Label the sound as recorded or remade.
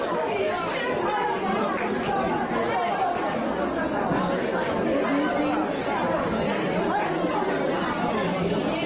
recorded